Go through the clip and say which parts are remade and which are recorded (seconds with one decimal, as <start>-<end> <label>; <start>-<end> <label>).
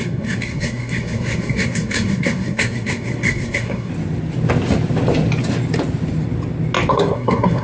0.0-3.9 remade; 3.9-6.9 recorded; 6.9-7.6 remade